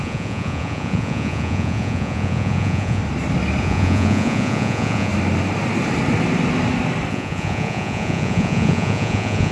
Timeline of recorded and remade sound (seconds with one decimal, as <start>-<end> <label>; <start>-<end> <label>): 0.0-3.0 remade; 3.0-3.6 recorded; 3.6-5.1 remade; 5.1-7.1 recorded; 7.1-9.5 remade